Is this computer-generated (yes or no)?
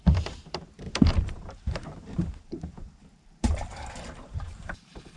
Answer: yes